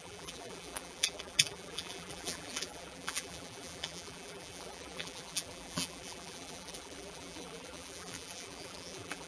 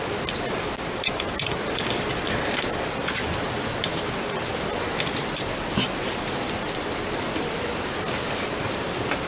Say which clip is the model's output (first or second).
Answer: first